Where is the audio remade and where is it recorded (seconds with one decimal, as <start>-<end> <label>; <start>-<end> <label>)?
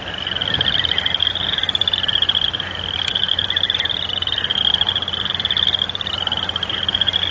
0.0-7.3 recorded